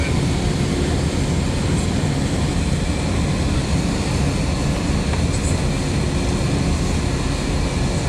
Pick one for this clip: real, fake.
real